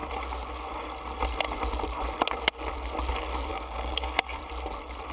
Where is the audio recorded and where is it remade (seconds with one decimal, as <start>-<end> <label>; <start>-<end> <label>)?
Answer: 0.0-3.5 recorded; 3.5-4.4 remade; 4.4-5.1 recorded